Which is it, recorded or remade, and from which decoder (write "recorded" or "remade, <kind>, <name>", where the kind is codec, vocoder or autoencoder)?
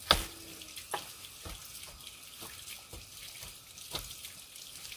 recorded